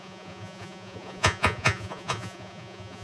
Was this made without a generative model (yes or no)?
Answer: no